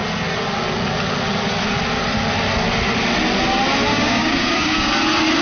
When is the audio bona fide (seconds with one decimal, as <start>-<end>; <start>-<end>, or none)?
0.0-3.9; 4.9-5.4

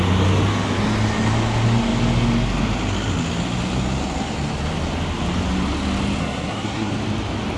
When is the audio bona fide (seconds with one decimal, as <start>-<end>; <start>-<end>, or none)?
0.0-6.2; 6.9-7.6

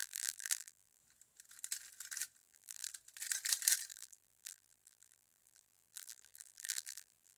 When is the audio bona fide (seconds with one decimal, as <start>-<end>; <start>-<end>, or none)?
1.0-2.4; 2.9-3.9

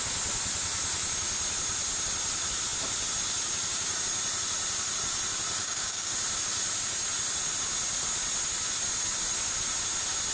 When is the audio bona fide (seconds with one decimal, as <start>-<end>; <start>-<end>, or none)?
0.0-5.6; 6.1-10.3